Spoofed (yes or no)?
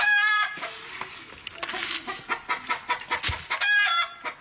no